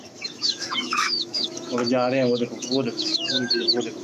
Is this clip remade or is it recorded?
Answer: remade